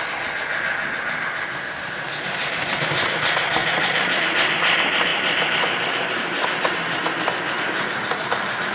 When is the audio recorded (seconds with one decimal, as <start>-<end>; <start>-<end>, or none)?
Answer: 0.0-3.6; 4.2-8.7